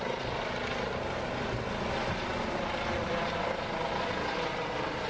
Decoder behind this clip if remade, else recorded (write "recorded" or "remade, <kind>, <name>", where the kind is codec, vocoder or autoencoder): recorded